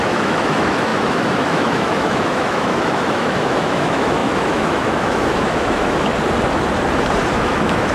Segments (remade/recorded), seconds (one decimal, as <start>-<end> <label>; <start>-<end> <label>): 0.0-6.1 remade; 6.1-7.3 recorded; 7.3-7.9 remade